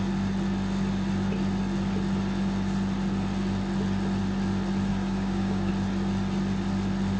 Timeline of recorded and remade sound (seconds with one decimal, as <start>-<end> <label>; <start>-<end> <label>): 0.0-4.9 recorded; 4.9-5.7 remade; 5.7-7.2 recorded